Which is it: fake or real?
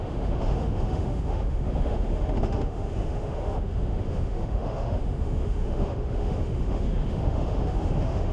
fake